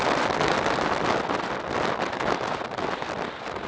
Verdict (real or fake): real